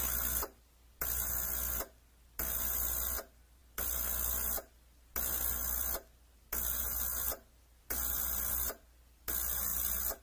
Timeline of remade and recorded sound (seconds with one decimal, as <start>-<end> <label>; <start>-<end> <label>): 0.0-10.2 recorded